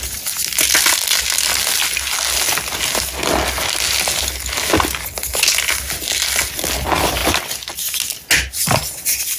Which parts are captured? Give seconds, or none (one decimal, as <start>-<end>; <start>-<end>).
0.0-9.4